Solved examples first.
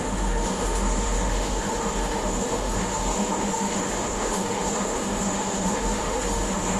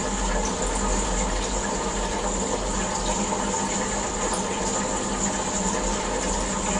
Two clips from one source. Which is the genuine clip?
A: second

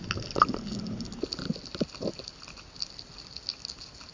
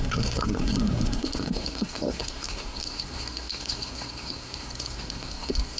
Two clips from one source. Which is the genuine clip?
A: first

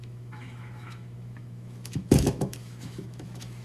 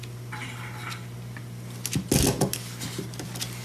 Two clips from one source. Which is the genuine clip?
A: second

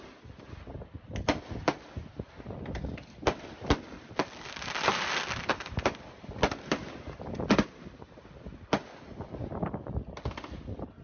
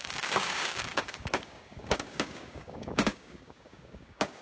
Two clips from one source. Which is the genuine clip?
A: first